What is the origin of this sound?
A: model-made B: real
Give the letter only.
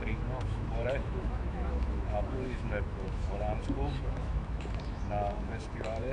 A